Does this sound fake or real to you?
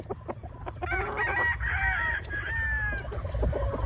real